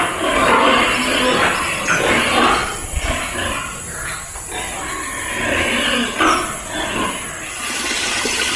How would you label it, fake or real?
real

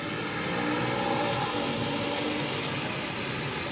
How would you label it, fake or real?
real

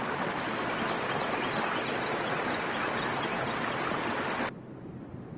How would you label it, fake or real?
real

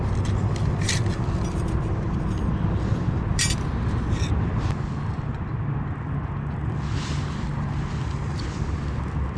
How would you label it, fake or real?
real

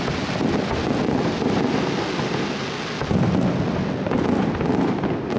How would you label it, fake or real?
real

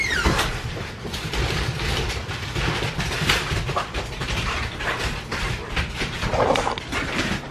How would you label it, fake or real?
fake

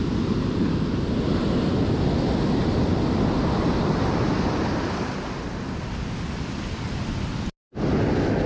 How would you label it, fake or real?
real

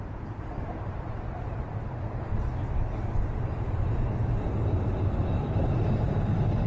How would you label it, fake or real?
real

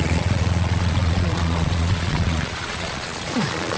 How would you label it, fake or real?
fake